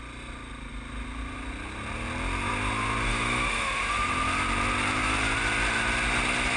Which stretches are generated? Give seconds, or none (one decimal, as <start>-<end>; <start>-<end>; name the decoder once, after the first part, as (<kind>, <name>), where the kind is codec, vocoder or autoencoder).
3.1-4.1 (autoencoder, DAC-VAE)